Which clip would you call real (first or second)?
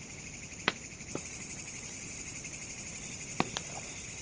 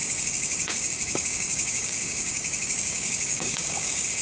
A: first